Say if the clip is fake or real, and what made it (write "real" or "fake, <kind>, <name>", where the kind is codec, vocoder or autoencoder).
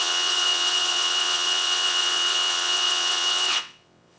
fake, vocoder, WaveNeXt